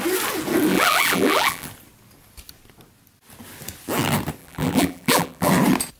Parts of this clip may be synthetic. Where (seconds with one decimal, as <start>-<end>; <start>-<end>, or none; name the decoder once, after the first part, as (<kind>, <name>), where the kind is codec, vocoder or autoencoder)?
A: 0.7-1.7 (vocoder, BigVGAN v2); 4.4-5.5